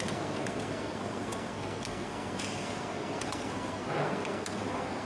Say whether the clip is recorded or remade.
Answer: remade